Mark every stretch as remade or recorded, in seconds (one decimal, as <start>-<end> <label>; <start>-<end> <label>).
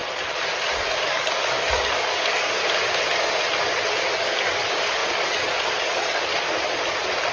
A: 0.0-1.0 recorded; 1.0-2.6 remade; 2.6-4.1 recorded; 4.1-6.3 remade; 6.3-7.3 recorded